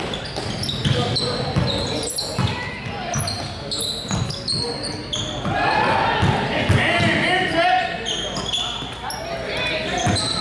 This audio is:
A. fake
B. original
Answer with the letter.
B